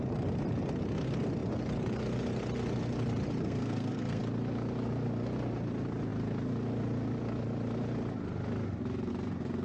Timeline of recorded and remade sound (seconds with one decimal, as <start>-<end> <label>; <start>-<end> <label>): 0.0-3.4 recorded; 3.4-4.2 remade; 4.2-9.6 recorded